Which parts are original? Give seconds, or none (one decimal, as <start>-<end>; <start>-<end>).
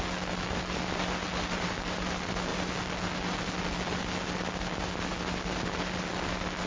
0.0-6.7